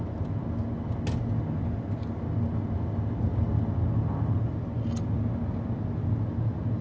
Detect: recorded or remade recorded